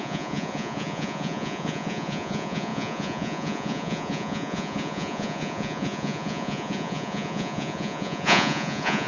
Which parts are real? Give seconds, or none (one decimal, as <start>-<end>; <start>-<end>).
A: none